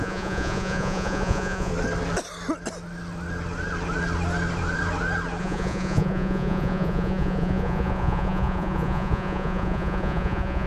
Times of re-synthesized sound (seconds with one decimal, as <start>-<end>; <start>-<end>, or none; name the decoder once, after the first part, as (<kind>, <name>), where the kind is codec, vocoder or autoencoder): 0.0-1.7 (vocoder, Vocos); 5.4-10.7